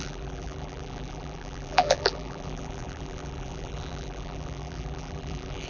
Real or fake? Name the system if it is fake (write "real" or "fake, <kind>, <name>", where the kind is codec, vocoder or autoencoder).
fake, vocoder, BigVGAN v2